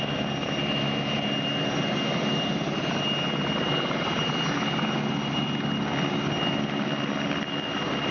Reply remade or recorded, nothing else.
recorded